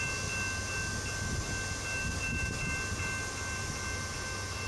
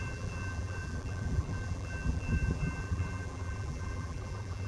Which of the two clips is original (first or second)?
first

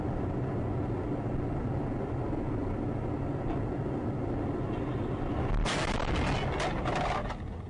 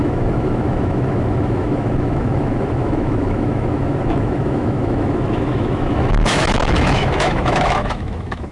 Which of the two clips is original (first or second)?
first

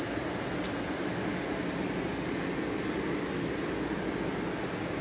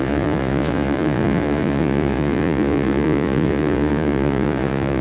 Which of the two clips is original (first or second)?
first